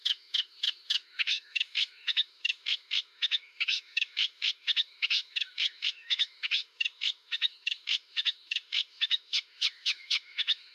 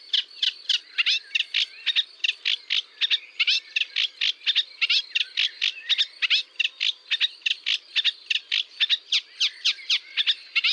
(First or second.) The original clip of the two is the second